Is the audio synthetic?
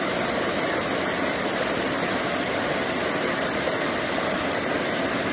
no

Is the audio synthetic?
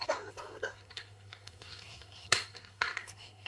yes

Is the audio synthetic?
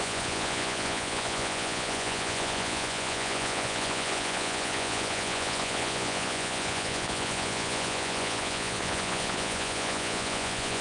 yes